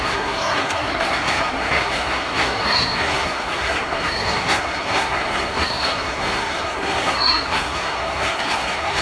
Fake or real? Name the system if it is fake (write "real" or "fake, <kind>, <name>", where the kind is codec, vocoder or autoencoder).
fake, codec, SNAC